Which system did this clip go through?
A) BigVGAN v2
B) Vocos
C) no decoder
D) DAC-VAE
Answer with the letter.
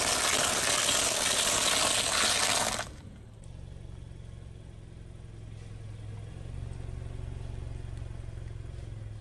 C